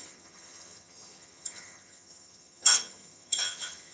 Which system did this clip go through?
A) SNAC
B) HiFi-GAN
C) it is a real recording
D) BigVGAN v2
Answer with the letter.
B